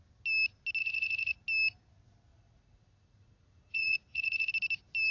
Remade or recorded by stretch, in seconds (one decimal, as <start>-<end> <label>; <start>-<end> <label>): 0.0-0.8 recorded; 0.8-1.4 remade; 1.4-2.3 recorded; 2.3-4.5 remade; 4.5-5.1 recorded